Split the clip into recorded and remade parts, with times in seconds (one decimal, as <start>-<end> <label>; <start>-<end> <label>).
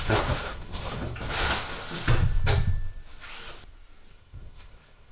0.0-1.0 remade; 1.0-4.1 recorded; 4.1-5.1 remade